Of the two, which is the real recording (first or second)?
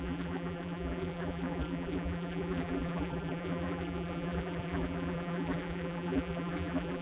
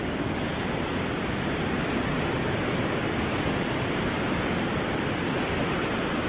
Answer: second